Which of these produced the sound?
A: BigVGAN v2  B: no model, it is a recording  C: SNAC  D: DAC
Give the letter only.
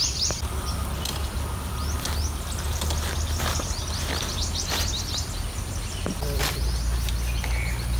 B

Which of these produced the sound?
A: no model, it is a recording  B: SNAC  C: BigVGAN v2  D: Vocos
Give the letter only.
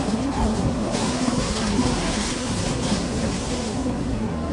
B